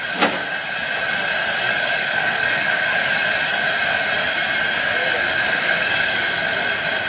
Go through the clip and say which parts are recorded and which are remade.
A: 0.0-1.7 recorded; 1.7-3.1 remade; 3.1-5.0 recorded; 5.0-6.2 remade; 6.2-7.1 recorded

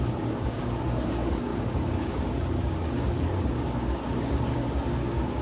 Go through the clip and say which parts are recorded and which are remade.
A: 0.0-5.4 remade

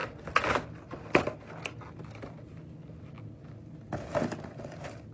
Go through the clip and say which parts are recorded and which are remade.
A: 0.0-5.1 recorded

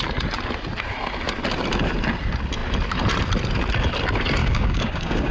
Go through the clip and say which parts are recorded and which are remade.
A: 0.0-4.4 recorded; 4.4-5.3 remade

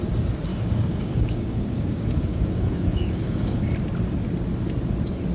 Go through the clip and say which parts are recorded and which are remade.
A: 0.0-0.5 recorded; 0.5-3.7 remade; 3.7-5.3 recorded

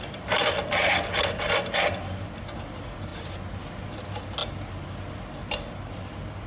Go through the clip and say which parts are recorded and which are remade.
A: 0.0-6.5 recorded

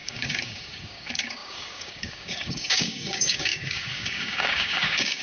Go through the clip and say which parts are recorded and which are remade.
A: 0.0-5.2 remade

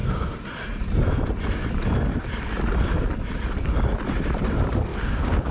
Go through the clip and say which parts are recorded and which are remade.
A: 0.0-4.9 recorded; 4.9-5.5 remade